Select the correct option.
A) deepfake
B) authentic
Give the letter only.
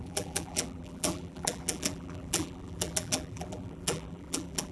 A